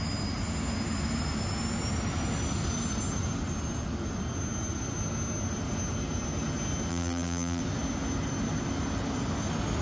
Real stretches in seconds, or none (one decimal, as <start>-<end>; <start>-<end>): 0.0-6.9; 7.6-9.8